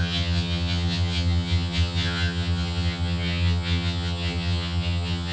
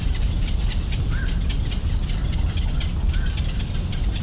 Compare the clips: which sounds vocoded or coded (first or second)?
first